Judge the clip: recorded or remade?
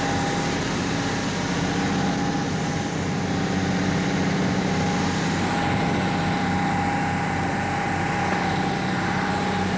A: recorded